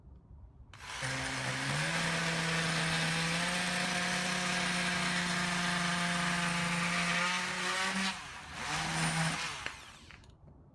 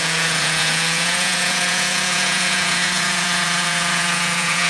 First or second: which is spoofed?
second